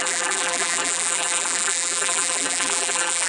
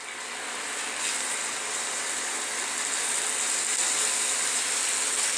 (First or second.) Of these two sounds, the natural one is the second